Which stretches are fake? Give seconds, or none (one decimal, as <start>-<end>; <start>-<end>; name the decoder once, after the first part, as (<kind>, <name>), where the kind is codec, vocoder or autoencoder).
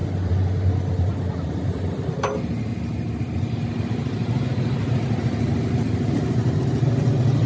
1.5-2.7 (vocoder, BigVGAN v2); 3.7-7.5